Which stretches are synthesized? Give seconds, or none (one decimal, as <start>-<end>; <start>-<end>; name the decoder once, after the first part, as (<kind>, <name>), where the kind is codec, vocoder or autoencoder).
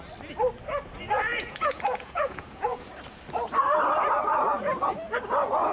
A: 1.3-2.9 (vocoder, Vocos)